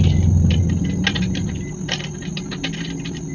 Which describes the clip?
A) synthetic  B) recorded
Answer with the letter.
B